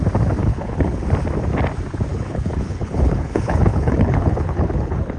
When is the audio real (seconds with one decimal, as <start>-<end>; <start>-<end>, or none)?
0.0-0.4; 1.0-2.1